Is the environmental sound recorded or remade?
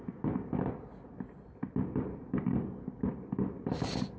recorded